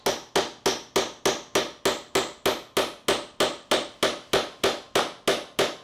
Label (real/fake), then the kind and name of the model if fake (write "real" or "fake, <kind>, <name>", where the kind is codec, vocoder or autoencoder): real